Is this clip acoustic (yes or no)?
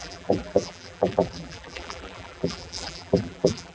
no